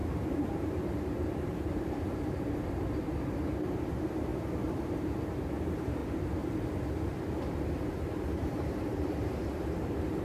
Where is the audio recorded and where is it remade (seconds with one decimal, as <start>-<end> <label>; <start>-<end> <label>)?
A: 0.0-6.0 remade; 6.0-7.9 recorded; 7.9-10.2 remade